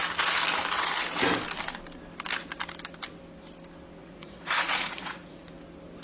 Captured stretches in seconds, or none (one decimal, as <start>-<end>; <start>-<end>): 0.0-4.0; 5.5-6.0